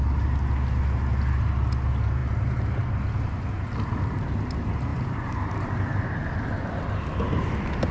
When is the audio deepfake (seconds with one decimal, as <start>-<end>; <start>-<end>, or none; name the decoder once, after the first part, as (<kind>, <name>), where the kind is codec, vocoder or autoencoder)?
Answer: 4.9-6.0 (vocoder, BigVGAN v2)